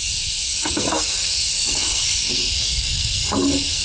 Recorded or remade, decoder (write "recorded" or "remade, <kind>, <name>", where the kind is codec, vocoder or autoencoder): remade, codec, SNAC